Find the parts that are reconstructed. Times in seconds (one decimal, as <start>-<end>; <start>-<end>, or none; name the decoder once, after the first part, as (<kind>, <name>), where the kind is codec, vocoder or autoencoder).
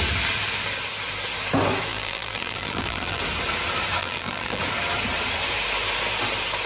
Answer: 1.9-3.2 (vocoder, BigVGAN v2); 4.0-4.6